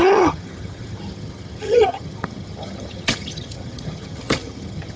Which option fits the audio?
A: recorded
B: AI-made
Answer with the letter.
B